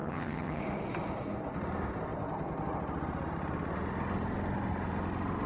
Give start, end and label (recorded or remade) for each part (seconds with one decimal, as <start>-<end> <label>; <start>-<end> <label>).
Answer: 0.0-0.6 remade; 0.6-5.5 recorded